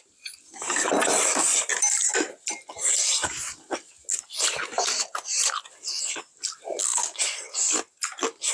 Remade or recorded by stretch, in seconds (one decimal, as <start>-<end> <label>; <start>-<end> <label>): 0.0-8.5 recorded